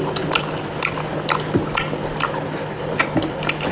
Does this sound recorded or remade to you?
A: recorded